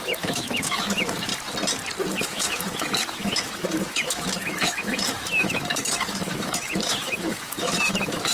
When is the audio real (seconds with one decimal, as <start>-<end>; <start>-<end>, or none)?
1.3-2.1